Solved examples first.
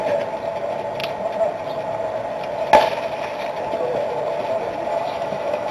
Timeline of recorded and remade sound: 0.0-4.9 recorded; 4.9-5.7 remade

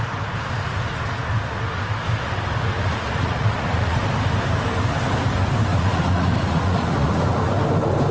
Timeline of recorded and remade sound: 0.0-2.9 recorded; 2.9-4.0 remade; 4.0-5.7 recorded; 5.7-7.5 remade; 7.5-8.1 recorded